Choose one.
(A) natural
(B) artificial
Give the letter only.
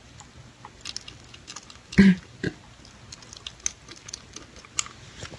A